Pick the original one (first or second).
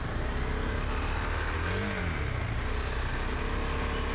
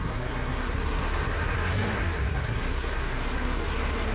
first